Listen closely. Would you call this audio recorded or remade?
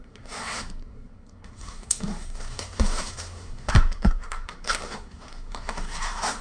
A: remade